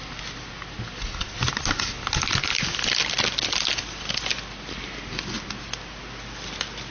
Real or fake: real